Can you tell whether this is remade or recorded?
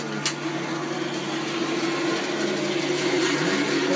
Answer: recorded